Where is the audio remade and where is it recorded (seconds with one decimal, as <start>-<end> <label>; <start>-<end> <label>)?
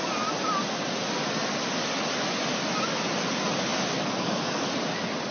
0.0-5.3 recorded